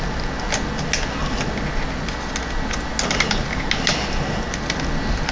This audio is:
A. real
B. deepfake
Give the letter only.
A